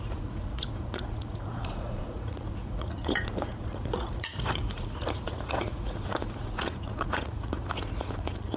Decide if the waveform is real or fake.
fake